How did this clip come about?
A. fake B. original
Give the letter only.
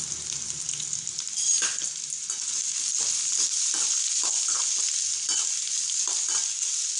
B